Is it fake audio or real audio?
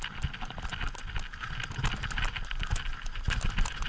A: real